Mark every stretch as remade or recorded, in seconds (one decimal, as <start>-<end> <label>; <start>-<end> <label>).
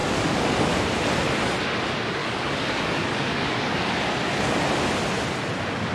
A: 0.0-0.7 remade; 0.7-2.2 recorded; 2.2-3.9 remade; 3.9-5.9 recorded